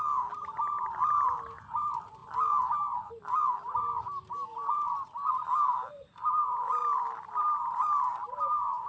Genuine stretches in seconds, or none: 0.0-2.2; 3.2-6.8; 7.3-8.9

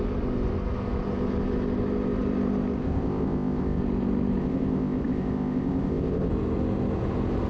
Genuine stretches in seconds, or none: 0.0-2.8; 3.8-4.4; 6.3-7.5

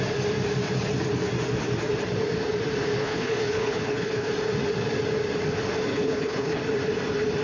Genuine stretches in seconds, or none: 0.0-3.0; 4.3-5.9; 6.6-7.4

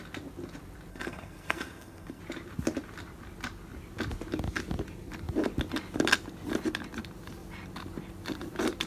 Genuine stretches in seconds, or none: 0.0-0.9; 2.2-8.9

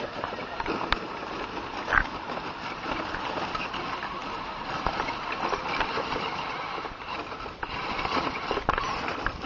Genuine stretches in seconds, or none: 0.0-9.5